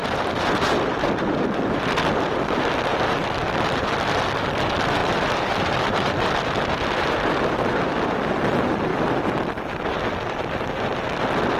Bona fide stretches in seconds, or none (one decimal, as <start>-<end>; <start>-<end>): 1.8-5.0; 6.1-8.9; 11.2-11.6